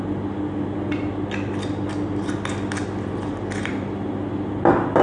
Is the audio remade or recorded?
recorded